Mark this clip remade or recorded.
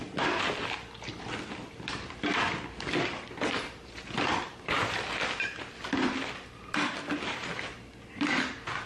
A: recorded